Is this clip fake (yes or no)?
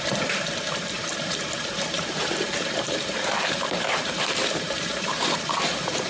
yes